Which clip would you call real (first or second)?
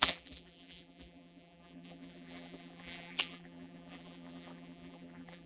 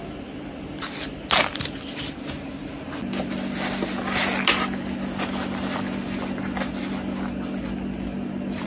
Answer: second